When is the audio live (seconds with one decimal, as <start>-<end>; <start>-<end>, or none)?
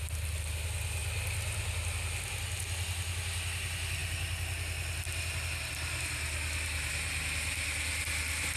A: 0.0-8.6